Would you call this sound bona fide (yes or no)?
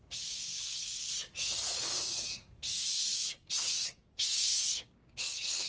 no